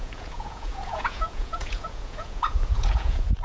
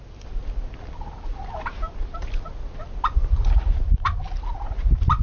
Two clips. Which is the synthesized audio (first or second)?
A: first